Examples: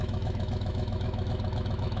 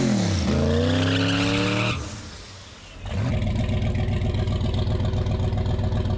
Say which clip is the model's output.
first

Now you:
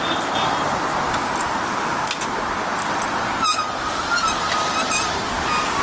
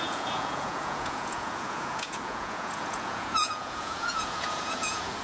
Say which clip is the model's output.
second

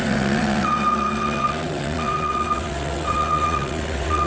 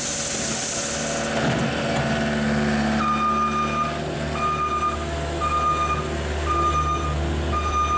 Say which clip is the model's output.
first